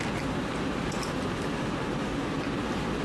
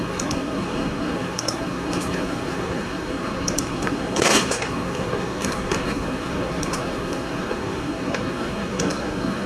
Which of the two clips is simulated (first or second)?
second